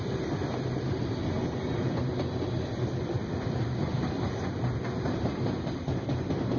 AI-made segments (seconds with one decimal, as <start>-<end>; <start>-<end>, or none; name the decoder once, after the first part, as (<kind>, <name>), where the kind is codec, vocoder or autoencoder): 0.0-1.2 (vocoder, BigVGAN v2); 3.0-6.6